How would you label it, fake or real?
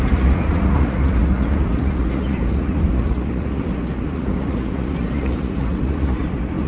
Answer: fake